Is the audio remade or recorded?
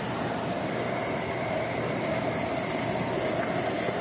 recorded